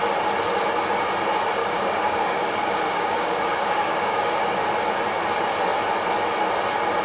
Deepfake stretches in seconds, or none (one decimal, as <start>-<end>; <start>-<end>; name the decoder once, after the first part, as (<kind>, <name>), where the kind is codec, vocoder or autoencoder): 1.6-4.7 (codec, DAC)